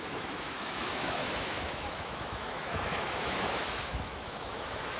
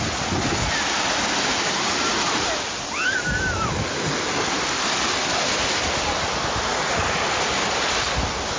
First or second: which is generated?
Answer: first